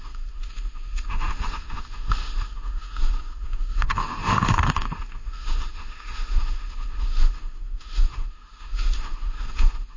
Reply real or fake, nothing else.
fake